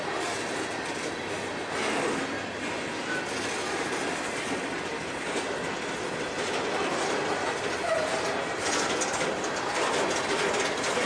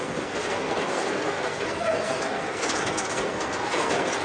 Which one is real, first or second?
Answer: first